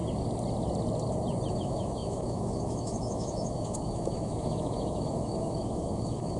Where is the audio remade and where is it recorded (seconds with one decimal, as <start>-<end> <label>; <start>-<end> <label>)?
0.0-1.5 recorded; 1.5-6.4 remade